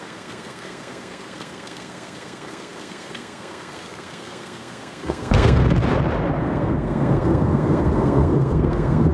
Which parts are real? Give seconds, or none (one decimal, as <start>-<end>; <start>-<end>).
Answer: 5.6-6.4